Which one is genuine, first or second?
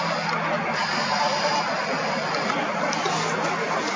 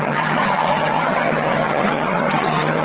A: first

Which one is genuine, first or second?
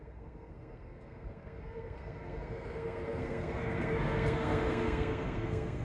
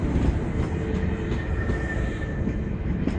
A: second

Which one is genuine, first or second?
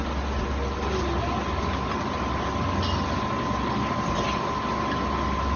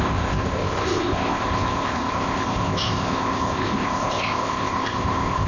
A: first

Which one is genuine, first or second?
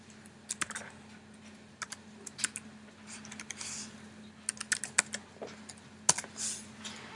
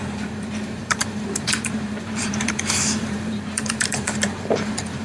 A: first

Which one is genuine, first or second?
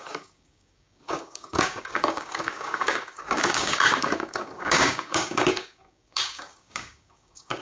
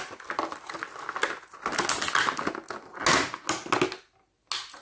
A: second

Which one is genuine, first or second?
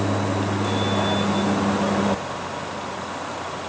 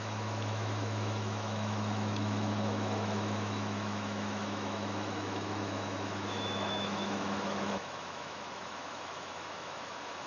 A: first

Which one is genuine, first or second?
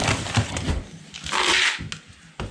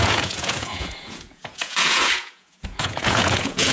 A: first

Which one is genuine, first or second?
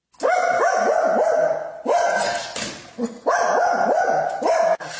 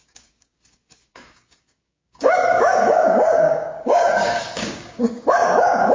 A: first